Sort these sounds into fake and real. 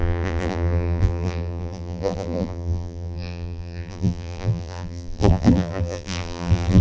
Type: fake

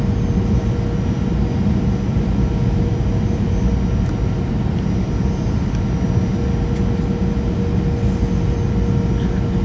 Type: real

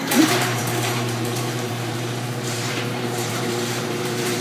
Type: fake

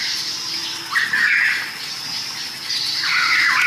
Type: real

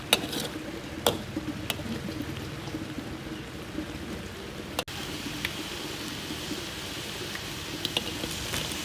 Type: real